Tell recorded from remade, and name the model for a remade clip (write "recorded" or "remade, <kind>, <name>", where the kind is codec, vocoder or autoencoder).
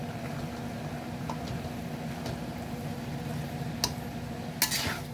recorded